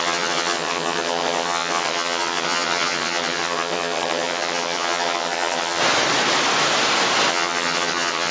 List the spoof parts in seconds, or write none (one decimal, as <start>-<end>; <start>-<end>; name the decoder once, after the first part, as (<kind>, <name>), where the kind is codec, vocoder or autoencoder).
0.0-5.8 (vocoder, HiFi-GAN); 7.3-8.3

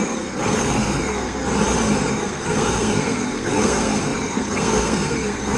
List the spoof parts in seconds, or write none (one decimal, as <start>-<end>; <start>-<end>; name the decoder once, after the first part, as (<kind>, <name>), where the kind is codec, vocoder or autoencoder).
0.0-1.4 (codec, SNAC); 2.1-5.6